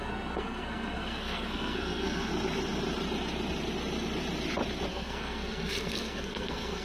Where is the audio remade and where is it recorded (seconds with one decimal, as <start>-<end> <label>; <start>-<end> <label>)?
0.0-2.3 remade; 2.3-4.9 recorded; 4.9-6.8 remade

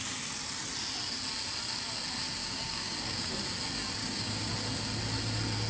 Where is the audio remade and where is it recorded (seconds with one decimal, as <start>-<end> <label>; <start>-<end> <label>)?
0.0-2.4 recorded; 2.4-3.3 remade; 3.3-4.0 recorded; 4.0-4.5 remade; 4.5-5.7 recorded